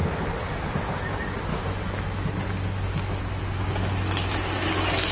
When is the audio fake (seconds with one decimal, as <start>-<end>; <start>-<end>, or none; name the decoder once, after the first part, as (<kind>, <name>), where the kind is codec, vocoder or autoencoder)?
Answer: 1.5-2.3 (autoencoder, DAC-VAE)